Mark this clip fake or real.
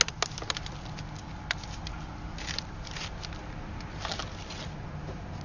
real